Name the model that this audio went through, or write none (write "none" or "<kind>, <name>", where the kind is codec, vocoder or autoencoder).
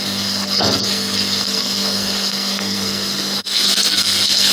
codec, SNAC